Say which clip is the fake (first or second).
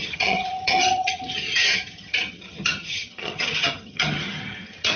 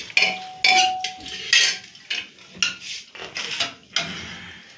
first